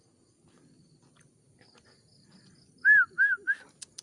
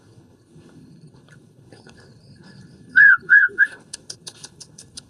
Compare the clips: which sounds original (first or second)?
first